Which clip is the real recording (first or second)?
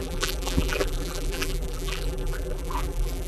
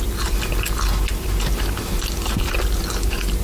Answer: second